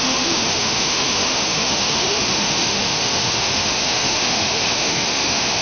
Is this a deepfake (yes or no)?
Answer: yes